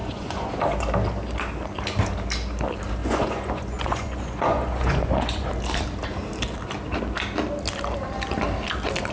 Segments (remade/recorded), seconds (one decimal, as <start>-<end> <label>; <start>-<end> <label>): 0.0-0.6 remade; 0.6-3.0 recorded; 3.0-5.5 remade; 5.5-9.1 recorded